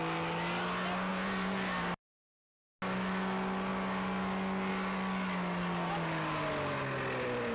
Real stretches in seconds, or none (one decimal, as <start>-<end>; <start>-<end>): 0.0-1.1; 2.4-7.5